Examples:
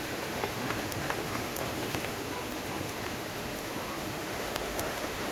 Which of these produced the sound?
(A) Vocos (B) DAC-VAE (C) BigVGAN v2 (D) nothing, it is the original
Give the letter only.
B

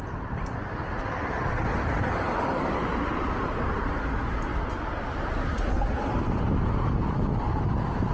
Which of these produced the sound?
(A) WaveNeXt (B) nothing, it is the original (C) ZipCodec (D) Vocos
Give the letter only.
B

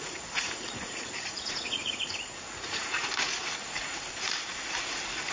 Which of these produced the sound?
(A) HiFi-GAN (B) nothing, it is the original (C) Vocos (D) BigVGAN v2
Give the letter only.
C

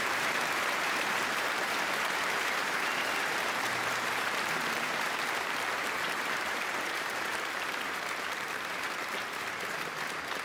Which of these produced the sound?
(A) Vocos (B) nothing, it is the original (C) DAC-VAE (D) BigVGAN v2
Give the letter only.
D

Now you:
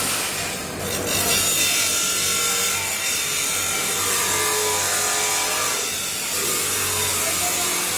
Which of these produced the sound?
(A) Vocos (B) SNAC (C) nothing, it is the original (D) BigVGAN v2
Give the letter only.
C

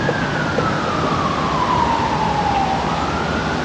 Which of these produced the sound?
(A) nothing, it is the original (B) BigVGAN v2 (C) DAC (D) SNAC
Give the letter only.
A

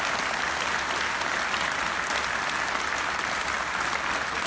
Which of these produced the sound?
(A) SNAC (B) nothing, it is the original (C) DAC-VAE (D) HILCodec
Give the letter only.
B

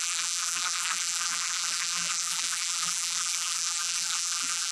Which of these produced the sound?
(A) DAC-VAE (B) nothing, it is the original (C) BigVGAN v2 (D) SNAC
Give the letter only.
C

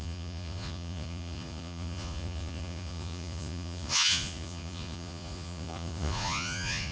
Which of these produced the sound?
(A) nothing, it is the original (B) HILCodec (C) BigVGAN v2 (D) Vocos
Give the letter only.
D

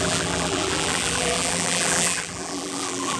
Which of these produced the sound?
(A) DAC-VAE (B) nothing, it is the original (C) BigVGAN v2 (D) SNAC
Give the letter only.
C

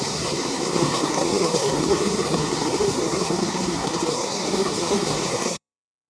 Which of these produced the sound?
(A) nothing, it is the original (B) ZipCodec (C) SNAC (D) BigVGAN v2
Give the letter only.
C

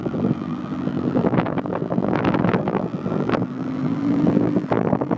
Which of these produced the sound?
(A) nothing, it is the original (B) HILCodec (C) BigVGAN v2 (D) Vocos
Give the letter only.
C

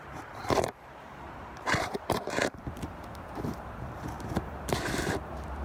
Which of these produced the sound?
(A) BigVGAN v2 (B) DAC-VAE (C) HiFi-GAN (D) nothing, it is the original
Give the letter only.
A